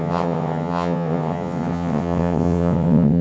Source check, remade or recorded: remade